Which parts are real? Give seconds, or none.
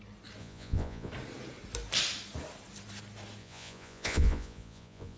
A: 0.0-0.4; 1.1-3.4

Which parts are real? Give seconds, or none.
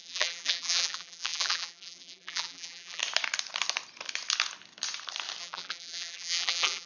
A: 3.0-5.4